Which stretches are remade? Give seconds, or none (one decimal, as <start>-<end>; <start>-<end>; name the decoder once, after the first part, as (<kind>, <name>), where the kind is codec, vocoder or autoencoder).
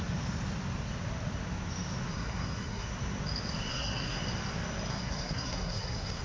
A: 2.1-2.9 (codec, SNAC); 3.7-4.2; 4.9-6.2